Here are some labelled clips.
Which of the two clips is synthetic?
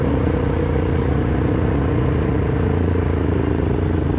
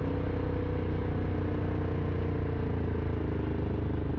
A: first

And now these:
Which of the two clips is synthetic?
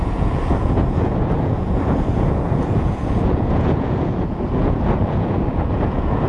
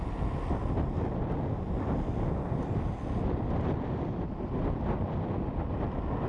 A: first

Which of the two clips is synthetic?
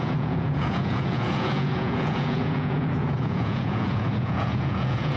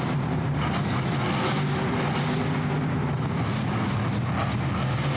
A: first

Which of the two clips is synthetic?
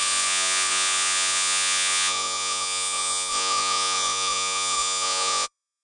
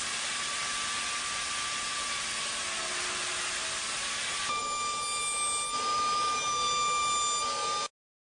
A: first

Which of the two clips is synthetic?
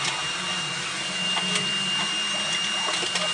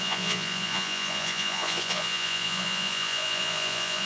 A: second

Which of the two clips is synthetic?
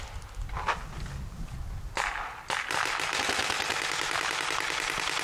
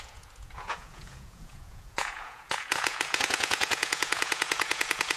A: second